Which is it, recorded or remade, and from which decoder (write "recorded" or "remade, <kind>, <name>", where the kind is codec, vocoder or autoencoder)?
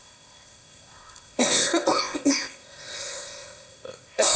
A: remade, codec, ZipCodec